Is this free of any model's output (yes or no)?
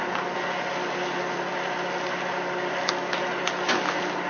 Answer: yes